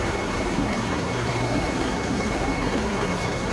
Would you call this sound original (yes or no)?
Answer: no